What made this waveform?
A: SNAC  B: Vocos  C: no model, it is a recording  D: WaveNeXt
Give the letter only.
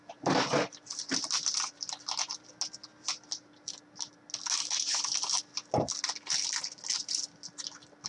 C